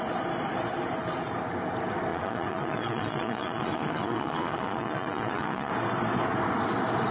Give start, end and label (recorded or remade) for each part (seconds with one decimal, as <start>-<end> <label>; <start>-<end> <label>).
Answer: 0.0-2.1 recorded; 2.1-5.7 remade; 5.7-7.1 recorded